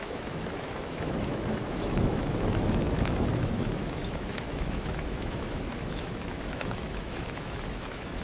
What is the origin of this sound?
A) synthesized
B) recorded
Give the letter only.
A